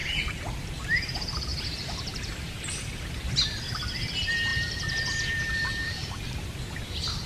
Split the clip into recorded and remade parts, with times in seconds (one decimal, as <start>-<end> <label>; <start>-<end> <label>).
0.0-0.6 recorded; 0.6-7.3 remade